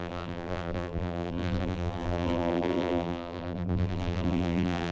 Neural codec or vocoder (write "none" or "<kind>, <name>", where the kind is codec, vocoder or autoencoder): vocoder, BigVGAN v2